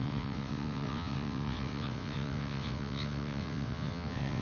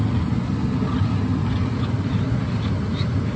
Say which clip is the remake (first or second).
first